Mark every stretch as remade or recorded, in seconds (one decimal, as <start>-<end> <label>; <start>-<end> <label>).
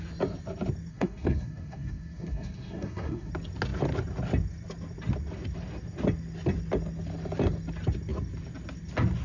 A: 0.0-0.9 recorded; 0.9-3.3 remade; 3.3-9.2 recorded